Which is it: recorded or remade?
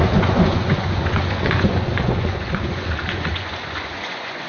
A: remade